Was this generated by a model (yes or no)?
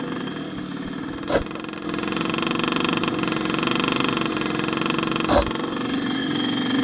no